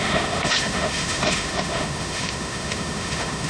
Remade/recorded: remade